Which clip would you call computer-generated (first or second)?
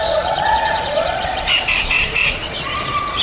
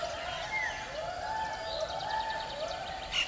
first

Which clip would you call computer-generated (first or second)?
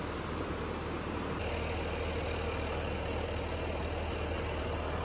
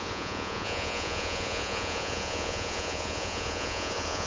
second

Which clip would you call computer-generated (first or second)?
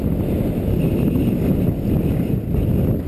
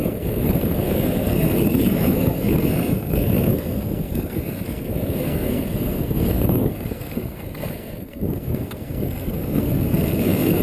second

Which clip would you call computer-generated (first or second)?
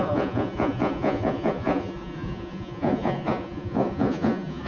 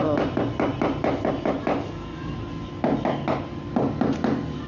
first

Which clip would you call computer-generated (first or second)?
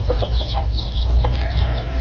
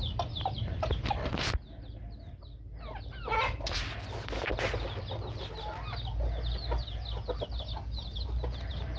first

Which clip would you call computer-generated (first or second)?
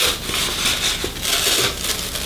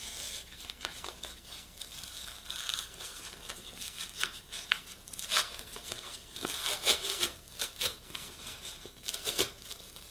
second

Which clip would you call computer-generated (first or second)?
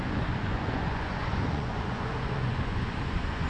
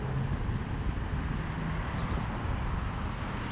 first